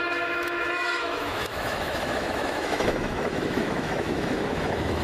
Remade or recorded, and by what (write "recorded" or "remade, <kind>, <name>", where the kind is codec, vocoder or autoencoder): remade, autoencoder, DAC-VAE